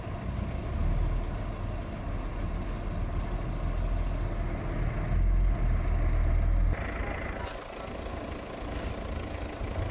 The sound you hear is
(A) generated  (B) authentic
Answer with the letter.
B